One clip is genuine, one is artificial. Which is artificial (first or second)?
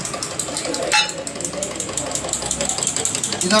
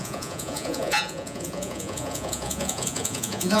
second